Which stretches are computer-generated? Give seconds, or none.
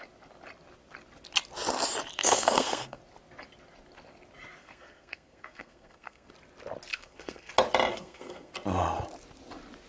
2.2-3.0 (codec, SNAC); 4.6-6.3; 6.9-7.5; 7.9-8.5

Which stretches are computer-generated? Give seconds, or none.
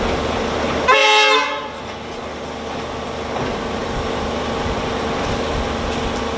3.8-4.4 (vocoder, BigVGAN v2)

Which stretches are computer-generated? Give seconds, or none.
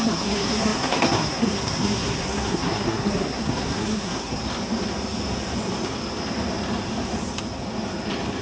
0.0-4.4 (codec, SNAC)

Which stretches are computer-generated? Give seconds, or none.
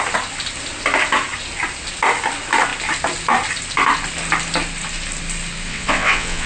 5.7-6.5 (vocoder, WaveNeXt)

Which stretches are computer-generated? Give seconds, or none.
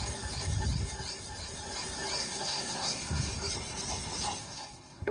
2.2-3.3 (codec, SNAC); 4.4-5.1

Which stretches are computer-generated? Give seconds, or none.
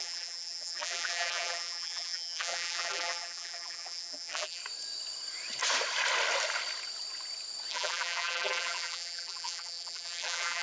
0.0-4.6 (vocoder, BigVGAN v2); 7.7-10.6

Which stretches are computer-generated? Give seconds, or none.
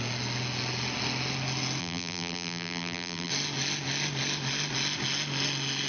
1.8-3.3 (vocoder, BigVGAN v2)